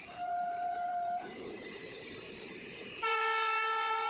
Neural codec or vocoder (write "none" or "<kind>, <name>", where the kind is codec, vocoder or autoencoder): vocoder, BigVGAN v2